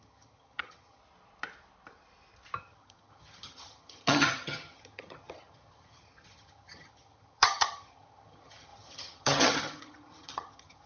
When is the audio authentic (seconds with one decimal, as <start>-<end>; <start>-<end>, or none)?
1.0-2.6